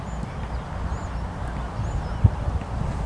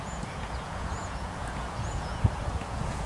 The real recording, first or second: first